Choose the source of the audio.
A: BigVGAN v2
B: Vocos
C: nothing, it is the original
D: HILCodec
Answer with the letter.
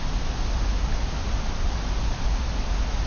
C